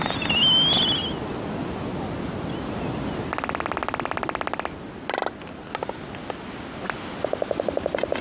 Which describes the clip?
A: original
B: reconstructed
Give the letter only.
A